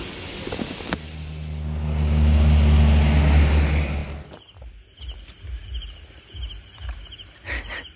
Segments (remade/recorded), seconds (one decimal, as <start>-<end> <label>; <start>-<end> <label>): 0.0-8.0 recorded

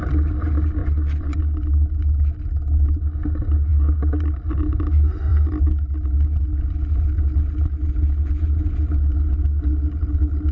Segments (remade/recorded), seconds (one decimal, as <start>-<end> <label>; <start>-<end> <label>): 0.0-0.8 recorded; 0.8-1.4 remade; 1.4-10.5 recorded

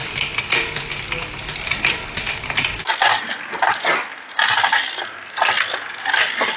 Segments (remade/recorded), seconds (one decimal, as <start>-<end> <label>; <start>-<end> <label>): 0.0-6.6 recorded

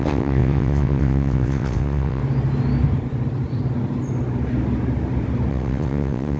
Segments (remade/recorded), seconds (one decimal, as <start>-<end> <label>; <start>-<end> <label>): 0.0-2.2 remade; 2.2-5.5 recorded; 5.5-6.4 remade

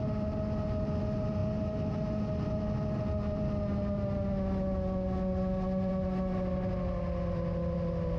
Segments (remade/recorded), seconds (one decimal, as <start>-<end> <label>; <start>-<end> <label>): 0.0-8.2 recorded